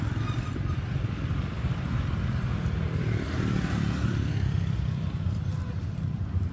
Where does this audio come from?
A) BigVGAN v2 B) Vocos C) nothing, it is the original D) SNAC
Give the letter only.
A